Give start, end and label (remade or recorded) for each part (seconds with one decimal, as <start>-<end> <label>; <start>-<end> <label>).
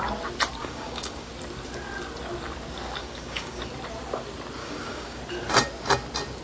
0.0-0.6 recorded; 0.6-1.3 remade; 1.3-3.0 recorded; 3.0-3.6 remade; 3.6-4.6 recorded; 4.6-5.2 remade; 5.2-6.4 recorded